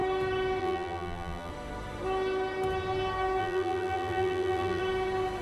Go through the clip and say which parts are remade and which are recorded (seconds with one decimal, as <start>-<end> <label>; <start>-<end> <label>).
0.0-0.6 recorded; 0.6-1.5 remade; 1.5-3.4 recorded; 3.4-4.8 remade; 4.8-5.4 recorded